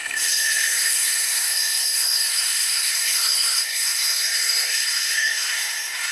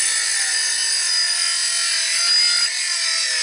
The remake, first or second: first